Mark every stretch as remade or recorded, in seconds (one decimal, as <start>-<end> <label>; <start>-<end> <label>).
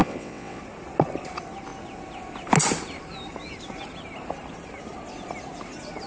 0.0-0.6 remade; 0.6-6.1 recorded